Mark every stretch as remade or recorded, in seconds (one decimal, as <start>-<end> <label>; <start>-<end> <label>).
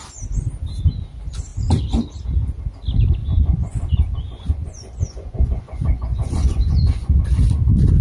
0.0-3.2 recorded; 3.2-7.2 remade; 7.2-8.0 recorded